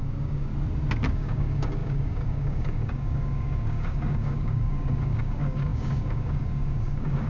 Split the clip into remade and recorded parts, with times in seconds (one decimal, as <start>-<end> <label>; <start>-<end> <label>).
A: 0.0-0.5 remade; 0.5-1.1 recorded; 1.1-7.3 remade